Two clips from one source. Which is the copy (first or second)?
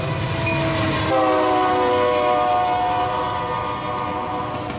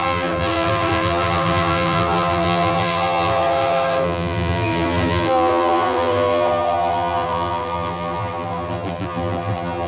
second